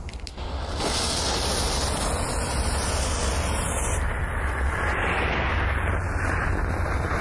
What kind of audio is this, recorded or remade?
recorded